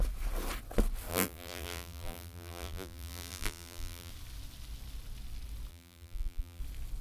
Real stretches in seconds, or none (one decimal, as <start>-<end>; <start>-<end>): 0.0-1.1; 4.1-5.7; 6.6-7.0